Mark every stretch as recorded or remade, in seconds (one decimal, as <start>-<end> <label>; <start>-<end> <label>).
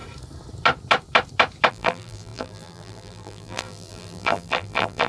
0.0-1.7 recorded; 1.7-5.1 remade